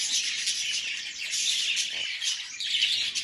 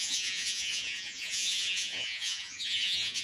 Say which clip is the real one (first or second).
first